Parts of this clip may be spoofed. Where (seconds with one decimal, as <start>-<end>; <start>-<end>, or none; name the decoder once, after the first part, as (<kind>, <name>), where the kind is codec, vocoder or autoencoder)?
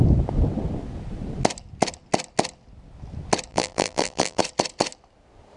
3.5-4.4 (vocoder, BigVGAN v2)